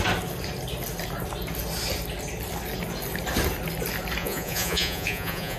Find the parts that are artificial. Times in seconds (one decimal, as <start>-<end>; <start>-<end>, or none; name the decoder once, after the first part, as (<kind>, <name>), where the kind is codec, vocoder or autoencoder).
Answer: 4.2-5.6 (vocoder, Vocos)